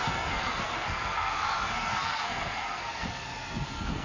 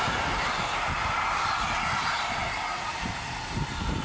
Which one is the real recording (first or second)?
second